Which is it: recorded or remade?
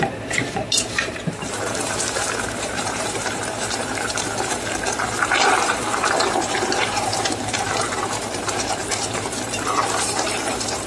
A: remade